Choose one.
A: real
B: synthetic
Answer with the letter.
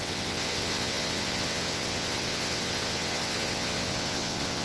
B